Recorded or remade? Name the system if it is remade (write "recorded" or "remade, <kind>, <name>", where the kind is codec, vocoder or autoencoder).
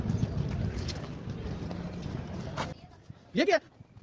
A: recorded